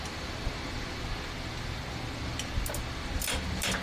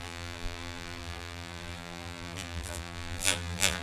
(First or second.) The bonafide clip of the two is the first